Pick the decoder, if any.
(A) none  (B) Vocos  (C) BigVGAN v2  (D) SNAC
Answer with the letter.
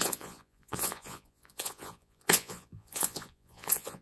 B